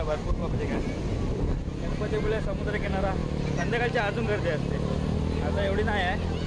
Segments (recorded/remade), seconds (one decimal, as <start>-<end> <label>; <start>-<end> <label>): 0.0-3.2 recorded; 3.2-3.8 remade; 3.8-6.5 recorded